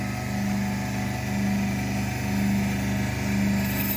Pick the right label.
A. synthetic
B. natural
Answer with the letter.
B